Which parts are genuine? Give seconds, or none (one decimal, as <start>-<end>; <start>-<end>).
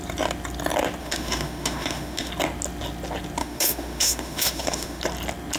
0.0-1.0; 2.3-3.4; 5.0-5.6